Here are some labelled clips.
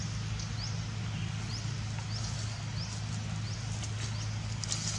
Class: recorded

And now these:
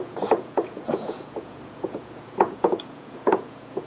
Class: remade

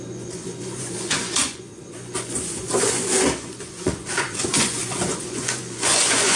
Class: remade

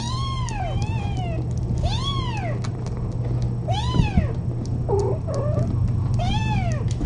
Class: recorded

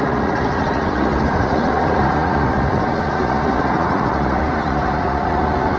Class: remade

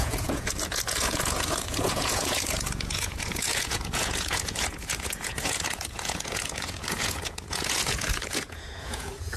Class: remade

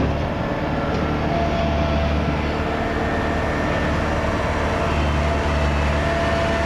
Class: recorded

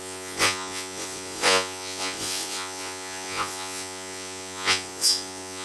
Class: remade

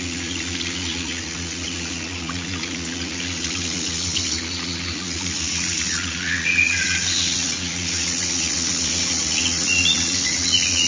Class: remade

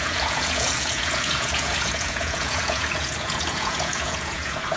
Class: remade